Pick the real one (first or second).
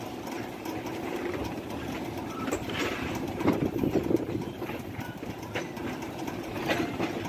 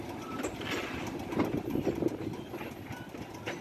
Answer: second